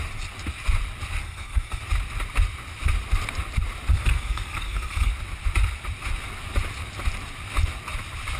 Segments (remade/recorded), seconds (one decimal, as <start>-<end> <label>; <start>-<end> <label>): 0.0-1.2 recorded; 1.2-1.8 remade; 1.8-3.9 recorded; 3.9-5.1 remade; 5.1-8.4 recorded